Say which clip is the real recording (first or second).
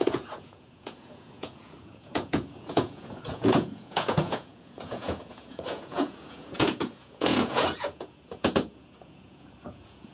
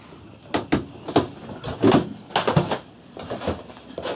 second